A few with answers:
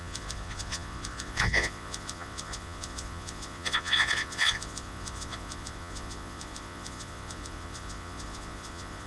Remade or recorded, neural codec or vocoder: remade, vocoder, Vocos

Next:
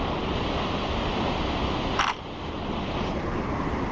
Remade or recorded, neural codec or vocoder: recorded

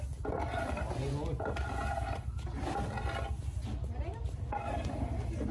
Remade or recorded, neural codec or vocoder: recorded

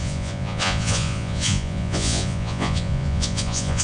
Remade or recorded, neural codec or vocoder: remade, vocoder, Vocos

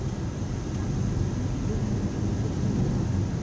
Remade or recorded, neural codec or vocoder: recorded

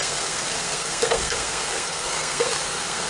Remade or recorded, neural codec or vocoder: remade, codec, SNAC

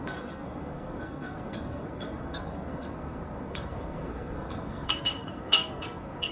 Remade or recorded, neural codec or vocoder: remade, codec, SNAC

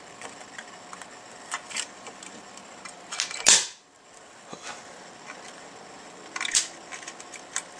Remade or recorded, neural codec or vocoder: recorded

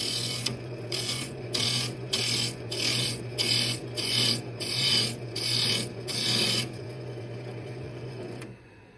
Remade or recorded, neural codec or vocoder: remade, vocoder, Vocos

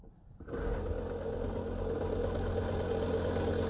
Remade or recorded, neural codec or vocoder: recorded